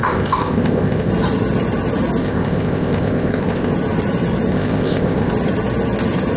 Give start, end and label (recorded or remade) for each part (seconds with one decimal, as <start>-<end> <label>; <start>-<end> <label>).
0.0-1.1 remade; 1.1-2.2 recorded; 2.2-3.7 remade; 3.7-4.5 recorded; 4.5-5.3 remade; 5.3-6.4 recorded